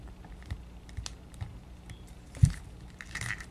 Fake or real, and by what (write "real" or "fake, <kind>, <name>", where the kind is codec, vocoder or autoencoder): fake, vocoder, BigVGAN v2